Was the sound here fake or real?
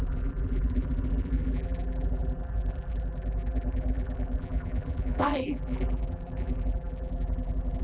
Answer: fake